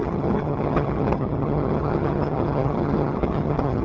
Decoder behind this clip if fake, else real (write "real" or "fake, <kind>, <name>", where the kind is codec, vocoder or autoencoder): fake, vocoder, HiFi-GAN